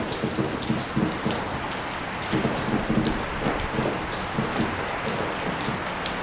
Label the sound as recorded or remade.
recorded